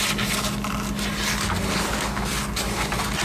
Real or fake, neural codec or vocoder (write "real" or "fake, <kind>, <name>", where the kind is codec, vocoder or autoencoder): real